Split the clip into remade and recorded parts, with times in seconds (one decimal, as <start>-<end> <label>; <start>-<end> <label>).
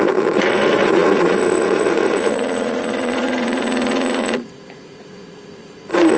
0.0-6.2 remade